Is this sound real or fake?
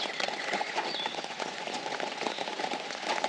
fake